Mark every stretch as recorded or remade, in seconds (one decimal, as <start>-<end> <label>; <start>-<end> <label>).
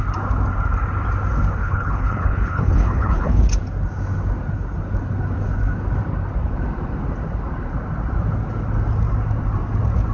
0.0-1.6 recorded; 1.6-3.4 remade; 3.4-10.1 recorded